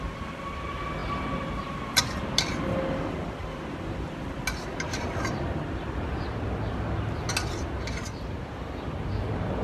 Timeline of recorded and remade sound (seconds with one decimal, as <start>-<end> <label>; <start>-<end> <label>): 0.0-9.6 recorded